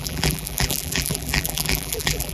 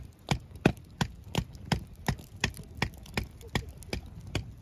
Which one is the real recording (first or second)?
second